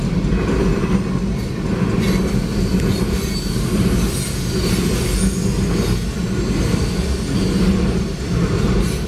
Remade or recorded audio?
recorded